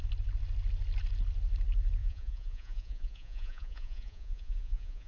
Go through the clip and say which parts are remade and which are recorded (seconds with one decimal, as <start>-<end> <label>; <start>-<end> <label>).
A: 0.0-2.0 recorded; 2.0-5.1 remade